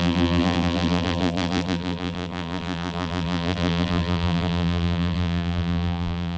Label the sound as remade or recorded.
remade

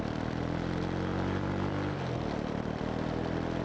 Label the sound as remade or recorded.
remade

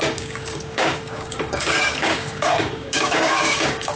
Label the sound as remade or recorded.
remade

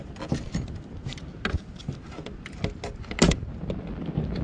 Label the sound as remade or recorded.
recorded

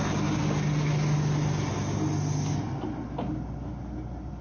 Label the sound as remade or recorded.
recorded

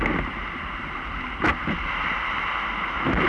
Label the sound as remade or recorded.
recorded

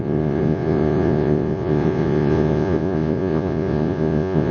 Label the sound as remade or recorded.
remade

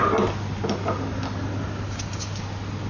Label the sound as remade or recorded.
recorded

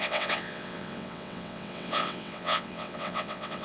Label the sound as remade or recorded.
remade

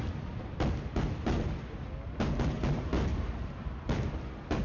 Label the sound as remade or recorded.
recorded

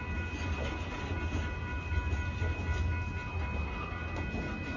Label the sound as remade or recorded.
recorded